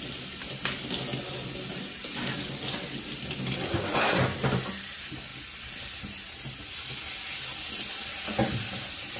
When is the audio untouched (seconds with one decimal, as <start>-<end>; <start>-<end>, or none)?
0.0-9.2